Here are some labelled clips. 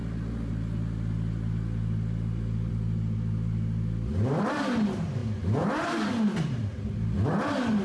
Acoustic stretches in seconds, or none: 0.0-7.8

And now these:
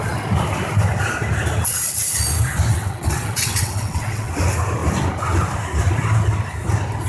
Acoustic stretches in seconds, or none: 0.0-2.7; 4.3-7.1

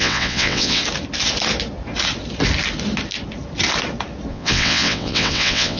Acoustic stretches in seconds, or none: 0.8-4.3

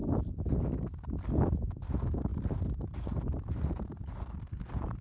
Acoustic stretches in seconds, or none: 0.0-5.0

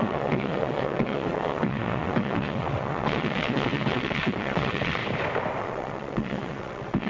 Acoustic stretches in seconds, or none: 5.0-5.6